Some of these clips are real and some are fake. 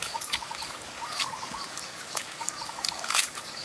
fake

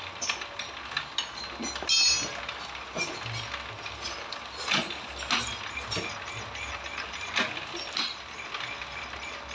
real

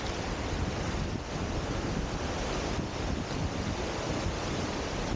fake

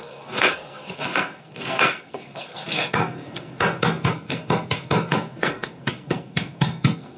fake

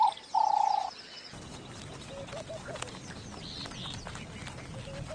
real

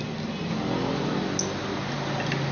real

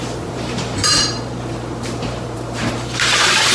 fake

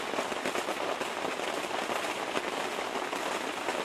real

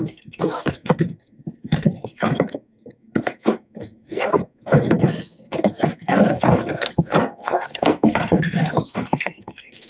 fake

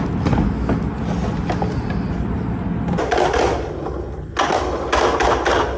real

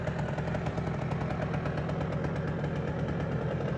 real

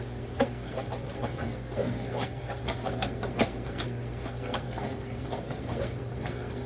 fake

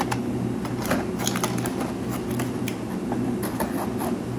real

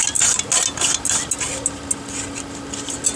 real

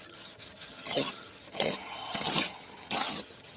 fake